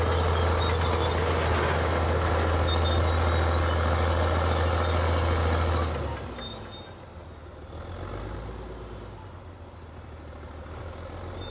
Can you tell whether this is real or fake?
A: real